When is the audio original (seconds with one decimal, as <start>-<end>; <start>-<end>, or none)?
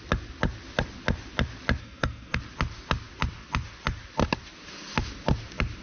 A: 0.0-1.8; 2.4-5.8